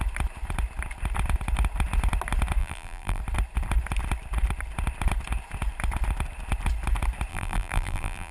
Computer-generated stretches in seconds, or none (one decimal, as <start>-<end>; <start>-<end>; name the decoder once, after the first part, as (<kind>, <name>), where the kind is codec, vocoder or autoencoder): 2.6-3.2 (vocoder, BigVGAN v2); 7.3-8.3